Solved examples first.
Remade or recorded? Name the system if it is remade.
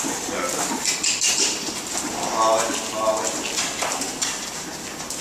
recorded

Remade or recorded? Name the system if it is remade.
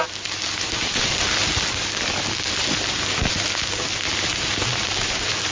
recorded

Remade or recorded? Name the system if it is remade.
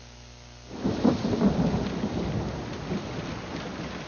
recorded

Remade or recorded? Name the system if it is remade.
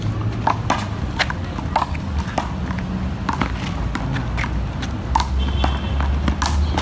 recorded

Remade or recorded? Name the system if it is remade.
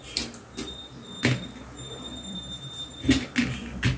recorded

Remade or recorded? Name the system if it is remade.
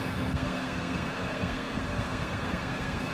remade, codec, SNAC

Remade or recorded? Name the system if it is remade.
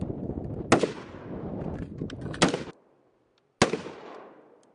recorded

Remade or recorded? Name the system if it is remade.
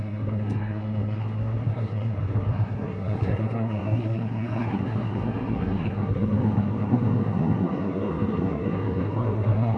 remade, codec, SNAC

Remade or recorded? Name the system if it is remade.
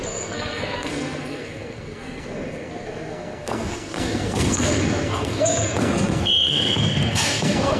remade, codec, SNAC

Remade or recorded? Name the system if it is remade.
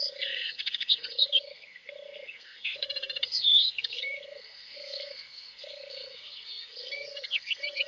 remade, codec, SNAC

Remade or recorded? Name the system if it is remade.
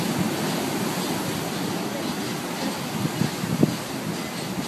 recorded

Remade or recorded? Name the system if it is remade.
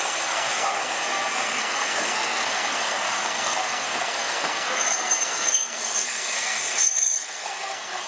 remade, codec, SNAC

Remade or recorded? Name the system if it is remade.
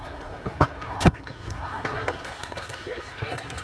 remade, codec, SNAC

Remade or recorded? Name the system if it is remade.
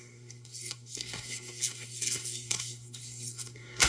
remade, codec, SNAC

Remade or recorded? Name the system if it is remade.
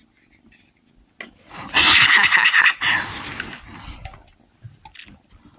recorded